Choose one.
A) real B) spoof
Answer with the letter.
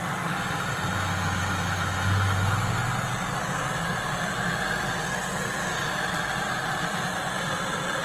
A